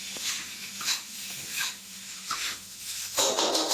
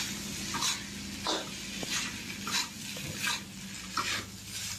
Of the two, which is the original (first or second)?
second